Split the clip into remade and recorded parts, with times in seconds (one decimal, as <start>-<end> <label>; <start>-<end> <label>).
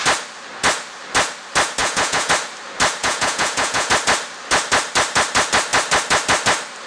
0.0-1.8 recorded; 1.8-2.3 remade; 2.3-3.0 recorded; 3.0-3.9 remade; 3.9-6.9 recorded